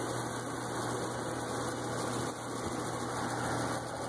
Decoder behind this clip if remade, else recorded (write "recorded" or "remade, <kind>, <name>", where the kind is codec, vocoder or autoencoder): recorded